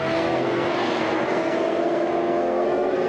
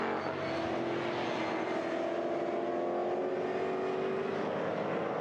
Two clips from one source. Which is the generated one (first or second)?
first